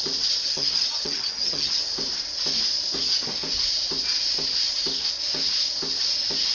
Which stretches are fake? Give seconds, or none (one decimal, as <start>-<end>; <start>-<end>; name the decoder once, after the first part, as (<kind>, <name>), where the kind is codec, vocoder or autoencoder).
0.4-1.8 (vocoder, HiFi-GAN)

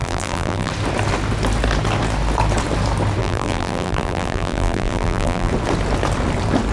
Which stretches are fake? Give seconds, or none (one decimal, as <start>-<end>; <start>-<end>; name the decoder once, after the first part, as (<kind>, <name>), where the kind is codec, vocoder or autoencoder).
0.0-0.7 (vocoder, BigVGAN v2); 3.2-5.5

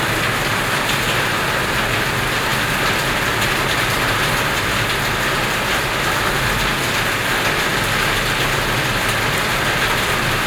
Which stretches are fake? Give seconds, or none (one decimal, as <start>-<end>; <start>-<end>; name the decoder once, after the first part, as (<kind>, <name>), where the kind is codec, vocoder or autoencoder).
none

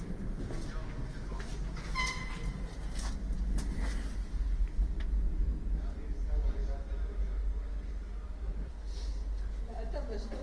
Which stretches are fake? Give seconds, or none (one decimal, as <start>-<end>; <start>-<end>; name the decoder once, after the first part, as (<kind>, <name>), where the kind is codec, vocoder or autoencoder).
none

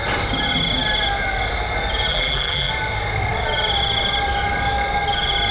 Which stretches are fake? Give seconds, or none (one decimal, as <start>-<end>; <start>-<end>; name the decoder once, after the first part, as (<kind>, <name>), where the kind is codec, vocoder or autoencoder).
2.1-2.7 (vocoder, BigVGAN v2)

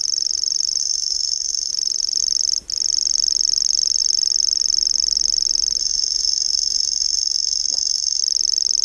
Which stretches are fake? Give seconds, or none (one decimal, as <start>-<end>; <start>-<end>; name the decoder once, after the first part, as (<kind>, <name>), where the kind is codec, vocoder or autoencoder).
0.8-1.7 (autoencoder, DAC-VAE); 5.8-8.2